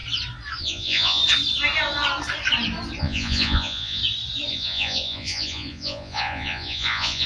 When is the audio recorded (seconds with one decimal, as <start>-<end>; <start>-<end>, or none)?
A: 0.0-0.6; 1.2-3.0; 4.0-4.5